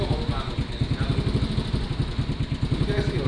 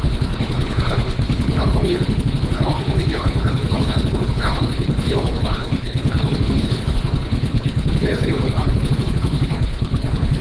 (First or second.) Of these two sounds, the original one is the first